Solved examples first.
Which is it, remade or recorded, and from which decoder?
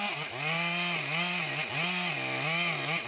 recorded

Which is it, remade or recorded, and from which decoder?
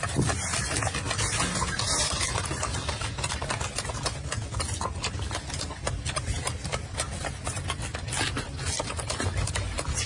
recorded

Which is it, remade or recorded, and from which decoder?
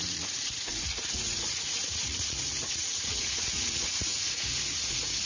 remade, vocoder, Vocos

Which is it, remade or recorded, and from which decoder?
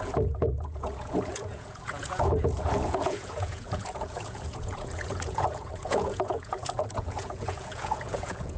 remade, vocoder, Vocos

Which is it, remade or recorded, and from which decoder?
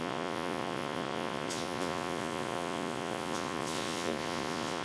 remade, vocoder, Vocos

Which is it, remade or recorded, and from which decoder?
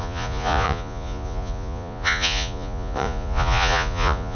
remade, vocoder, Vocos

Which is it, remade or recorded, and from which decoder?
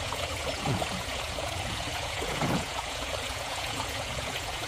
remade, vocoder, Vocos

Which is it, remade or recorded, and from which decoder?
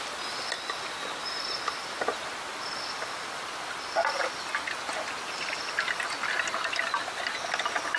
recorded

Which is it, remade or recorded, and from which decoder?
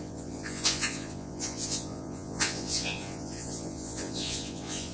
remade, vocoder, Vocos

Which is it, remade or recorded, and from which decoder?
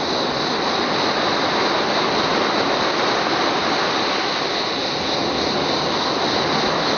recorded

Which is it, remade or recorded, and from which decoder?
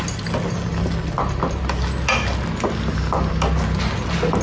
recorded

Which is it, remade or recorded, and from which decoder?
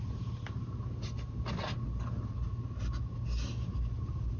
recorded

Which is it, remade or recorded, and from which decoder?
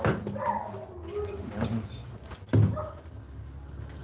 recorded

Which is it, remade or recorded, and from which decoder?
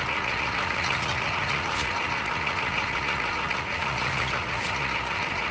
remade, vocoder, Vocos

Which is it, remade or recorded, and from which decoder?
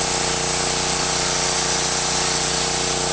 recorded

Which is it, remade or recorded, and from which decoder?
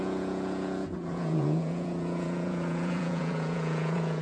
remade, vocoder, Vocos